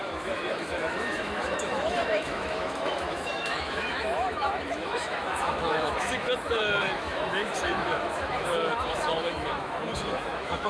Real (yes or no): no